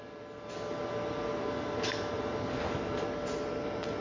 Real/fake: real